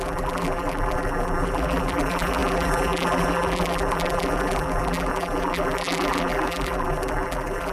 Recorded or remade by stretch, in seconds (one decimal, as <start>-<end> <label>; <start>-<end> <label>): 0.0-7.7 remade